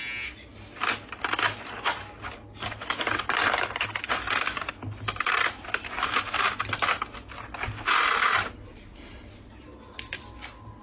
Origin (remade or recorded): recorded